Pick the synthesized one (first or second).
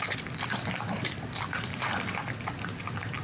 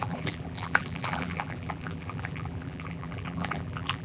second